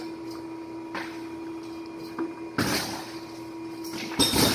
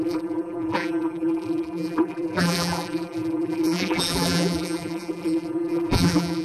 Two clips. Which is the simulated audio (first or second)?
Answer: second